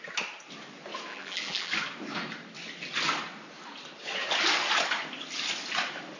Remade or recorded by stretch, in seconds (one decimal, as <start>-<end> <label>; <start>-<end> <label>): 0.0-1.1 recorded; 1.1-1.7 remade; 1.7-6.2 recorded